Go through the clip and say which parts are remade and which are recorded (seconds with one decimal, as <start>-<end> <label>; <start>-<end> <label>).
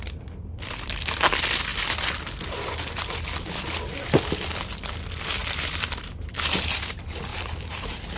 0.0-5.4 recorded; 5.4-6.8 remade; 6.8-7.3 recorded; 7.3-8.2 remade